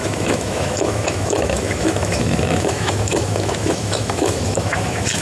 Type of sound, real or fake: fake